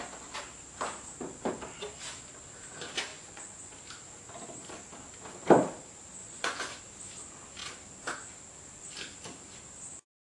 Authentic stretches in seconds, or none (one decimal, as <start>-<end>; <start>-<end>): 0.0-3.1; 3.7-6.2; 6.8-10.2